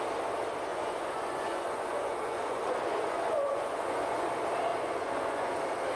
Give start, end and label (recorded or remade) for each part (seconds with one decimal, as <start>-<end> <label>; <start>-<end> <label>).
0.0-0.7 recorded; 0.7-4.3 remade; 4.3-4.7 recorded; 4.7-5.6 remade; 5.6-6.0 recorded